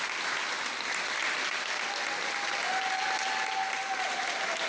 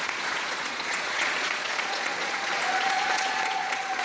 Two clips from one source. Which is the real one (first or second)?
first